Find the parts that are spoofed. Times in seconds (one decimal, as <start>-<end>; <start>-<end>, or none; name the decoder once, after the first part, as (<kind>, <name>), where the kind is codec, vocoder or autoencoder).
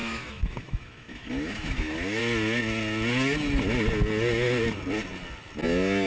0.0-2.2 (autoencoder, DAC-VAE)